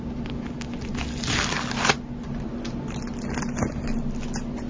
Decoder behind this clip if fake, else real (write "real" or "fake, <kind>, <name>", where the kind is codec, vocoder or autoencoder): real